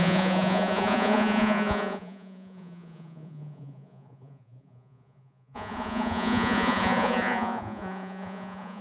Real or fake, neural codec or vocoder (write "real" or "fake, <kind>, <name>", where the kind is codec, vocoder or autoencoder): fake, vocoder, Vocos